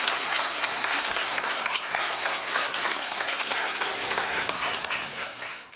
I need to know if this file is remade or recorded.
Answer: remade